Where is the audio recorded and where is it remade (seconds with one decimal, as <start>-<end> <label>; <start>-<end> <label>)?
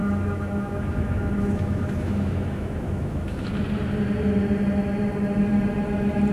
0.0-3.6 remade; 3.6-6.3 recorded